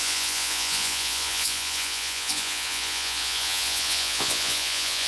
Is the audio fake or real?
fake